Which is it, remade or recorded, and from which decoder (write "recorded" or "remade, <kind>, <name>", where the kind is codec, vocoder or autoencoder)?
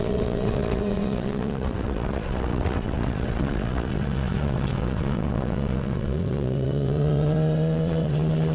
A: remade, vocoder, WaveNeXt